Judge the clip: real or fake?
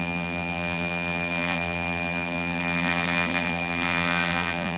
fake